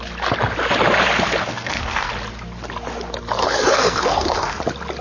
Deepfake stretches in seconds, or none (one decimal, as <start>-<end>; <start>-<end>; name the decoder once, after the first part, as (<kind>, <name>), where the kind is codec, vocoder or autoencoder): 1.4-2.1 (codec, SNAC); 3.4-4.6